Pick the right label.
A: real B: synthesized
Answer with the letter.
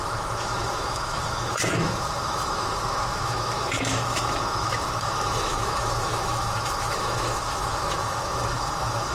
B